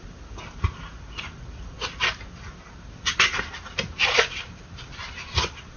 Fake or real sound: real